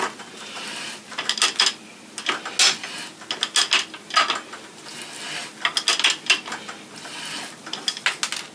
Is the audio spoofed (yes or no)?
no